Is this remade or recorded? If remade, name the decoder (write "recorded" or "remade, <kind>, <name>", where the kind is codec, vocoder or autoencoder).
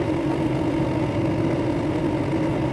recorded